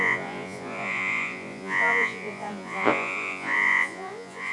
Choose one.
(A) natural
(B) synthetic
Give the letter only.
B